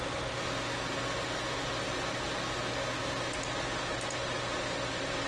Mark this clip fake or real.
real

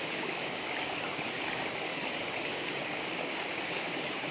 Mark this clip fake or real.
fake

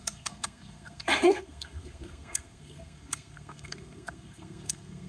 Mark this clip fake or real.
fake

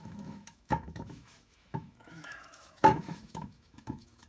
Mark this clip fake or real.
fake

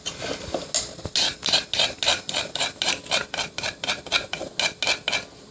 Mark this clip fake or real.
real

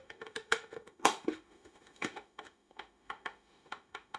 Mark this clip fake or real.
fake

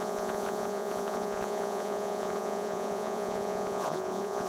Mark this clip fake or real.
fake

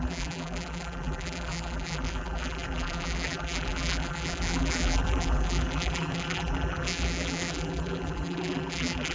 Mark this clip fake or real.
fake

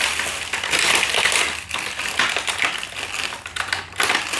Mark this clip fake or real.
real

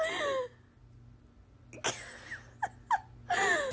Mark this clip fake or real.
real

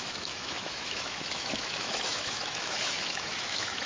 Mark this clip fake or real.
fake